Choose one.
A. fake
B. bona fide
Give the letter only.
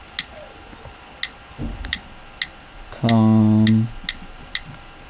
B